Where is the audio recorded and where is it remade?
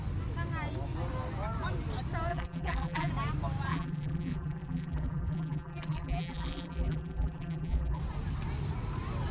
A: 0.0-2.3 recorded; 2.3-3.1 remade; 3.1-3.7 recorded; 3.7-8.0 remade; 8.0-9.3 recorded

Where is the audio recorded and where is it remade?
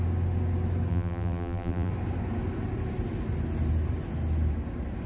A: 0.0-0.9 recorded; 0.9-1.9 remade; 1.9-5.1 recorded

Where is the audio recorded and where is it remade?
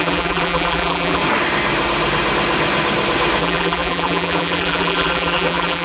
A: 0.0-1.2 remade; 1.2-3.4 recorded; 3.4-5.8 remade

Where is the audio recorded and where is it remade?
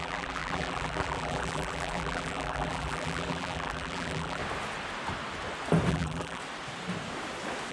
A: 0.0-4.4 remade; 4.4-5.9 recorded; 5.9-6.4 remade; 6.4-7.7 recorded